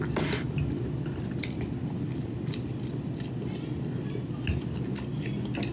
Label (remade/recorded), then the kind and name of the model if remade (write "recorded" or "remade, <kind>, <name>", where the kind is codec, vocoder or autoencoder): recorded